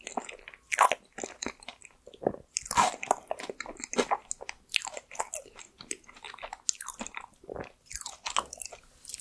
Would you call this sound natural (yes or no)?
yes